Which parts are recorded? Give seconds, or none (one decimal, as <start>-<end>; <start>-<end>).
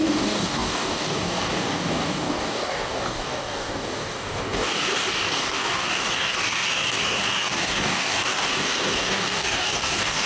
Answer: none